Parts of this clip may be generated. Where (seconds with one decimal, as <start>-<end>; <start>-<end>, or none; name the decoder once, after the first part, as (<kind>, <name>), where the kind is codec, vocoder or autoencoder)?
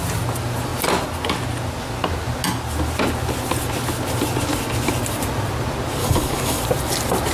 6.0-6.6 (codec, DAC)